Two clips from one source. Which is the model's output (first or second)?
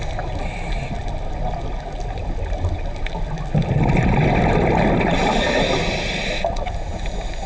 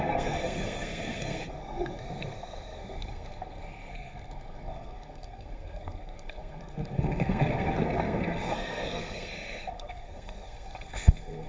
second